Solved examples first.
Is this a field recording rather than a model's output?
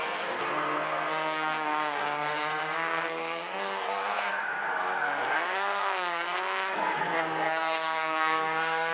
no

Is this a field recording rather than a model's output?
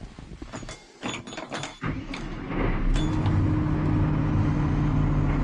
yes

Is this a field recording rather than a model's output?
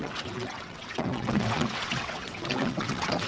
no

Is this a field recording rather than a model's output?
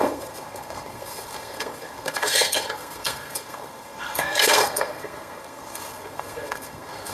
no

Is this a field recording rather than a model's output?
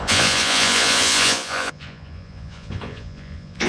no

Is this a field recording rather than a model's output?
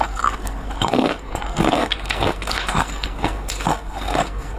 no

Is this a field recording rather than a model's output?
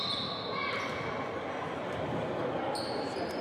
yes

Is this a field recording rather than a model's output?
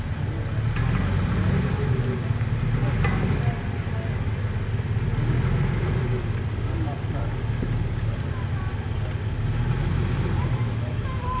yes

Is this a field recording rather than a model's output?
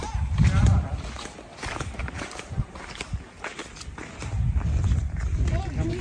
yes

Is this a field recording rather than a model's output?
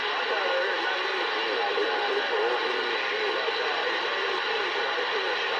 yes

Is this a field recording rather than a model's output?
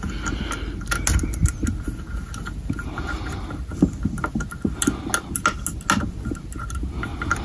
yes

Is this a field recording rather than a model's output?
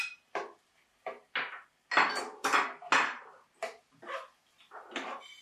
yes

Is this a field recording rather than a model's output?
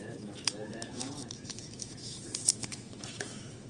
no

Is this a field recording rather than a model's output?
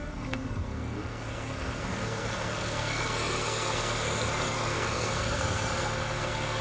no